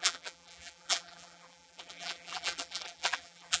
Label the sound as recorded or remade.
remade